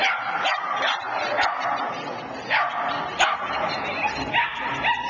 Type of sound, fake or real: real